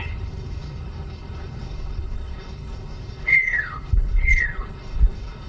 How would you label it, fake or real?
fake